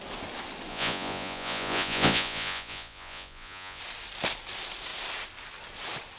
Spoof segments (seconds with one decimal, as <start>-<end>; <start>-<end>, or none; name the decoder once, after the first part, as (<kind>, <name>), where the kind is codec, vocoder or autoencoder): 0.7-3.8 (vocoder, Vocos)